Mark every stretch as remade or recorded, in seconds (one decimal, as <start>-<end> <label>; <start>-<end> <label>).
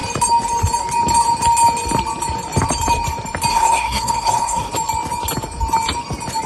0.0-3.5 recorded; 3.5-4.7 remade; 4.7-6.5 recorded